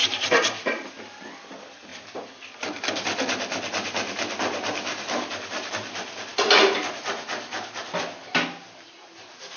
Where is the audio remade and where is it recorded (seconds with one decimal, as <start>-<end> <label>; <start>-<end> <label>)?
0.0-0.9 remade; 0.9-9.6 recorded